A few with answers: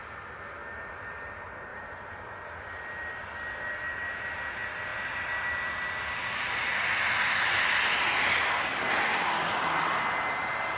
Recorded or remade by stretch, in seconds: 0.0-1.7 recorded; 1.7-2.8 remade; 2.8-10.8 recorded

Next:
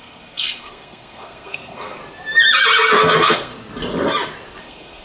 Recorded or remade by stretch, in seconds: 0.0-2.0 remade; 2.0-3.0 recorded; 3.0-3.5 remade; 3.5-4.6 recorded; 4.6-5.0 remade

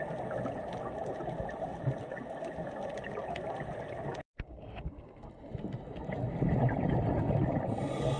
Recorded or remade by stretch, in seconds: 0.0-8.2 recorded

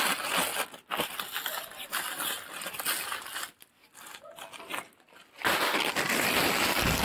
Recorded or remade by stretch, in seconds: 0.0-7.0 recorded

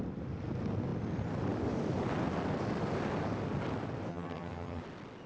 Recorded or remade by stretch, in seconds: 0.0-4.1 recorded; 4.1-4.8 remade; 4.8-5.3 recorded